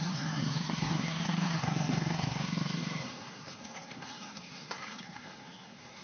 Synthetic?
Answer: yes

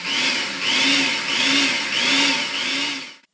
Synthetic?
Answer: no